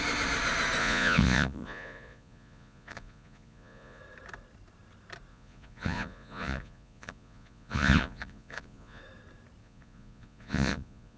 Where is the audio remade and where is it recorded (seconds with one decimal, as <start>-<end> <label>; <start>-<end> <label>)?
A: 0.0-0.8 recorded; 0.8-4.0 remade; 4.0-5.3 recorded; 5.3-9.0 remade; 9.0-9.6 recorded; 9.6-11.2 remade